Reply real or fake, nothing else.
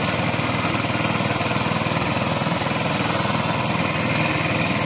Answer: real